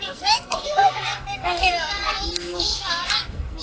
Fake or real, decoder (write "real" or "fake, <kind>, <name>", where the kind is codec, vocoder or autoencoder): fake, codec, SNAC